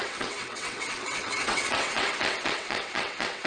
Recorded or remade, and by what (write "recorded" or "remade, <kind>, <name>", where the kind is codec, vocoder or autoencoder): remade, vocoder, WaveNeXt